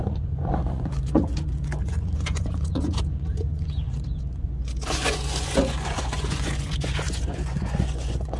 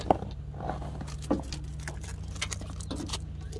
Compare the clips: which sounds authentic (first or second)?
second